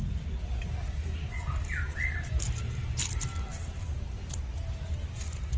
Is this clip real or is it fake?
real